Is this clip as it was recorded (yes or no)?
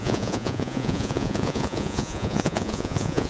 no